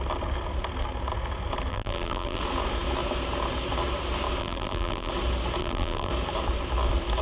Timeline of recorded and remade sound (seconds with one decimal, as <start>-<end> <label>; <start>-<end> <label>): 0.0-1.7 recorded; 1.7-2.4 remade; 2.4-4.4 recorded; 4.4-5.1 remade; 5.1-5.6 recorded; 5.6-6.1 remade; 6.1-7.2 recorded